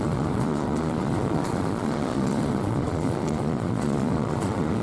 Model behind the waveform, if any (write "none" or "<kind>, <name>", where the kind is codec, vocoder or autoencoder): vocoder, Vocos